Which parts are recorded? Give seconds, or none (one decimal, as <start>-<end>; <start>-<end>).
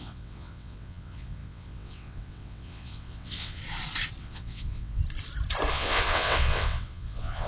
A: 3.6-4.2; 5.0-5.7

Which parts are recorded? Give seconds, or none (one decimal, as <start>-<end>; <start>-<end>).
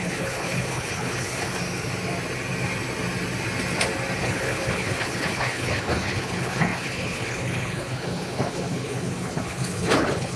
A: 1.6-4.2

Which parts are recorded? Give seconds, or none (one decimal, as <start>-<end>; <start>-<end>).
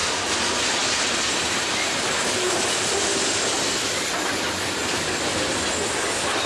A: 3.9-4.8; 5.5-6.5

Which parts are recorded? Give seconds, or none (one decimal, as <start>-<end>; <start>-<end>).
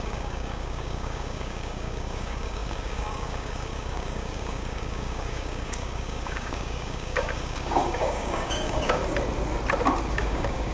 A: 9.0-10.1